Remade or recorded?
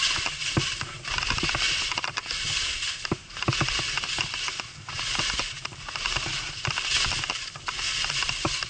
recorded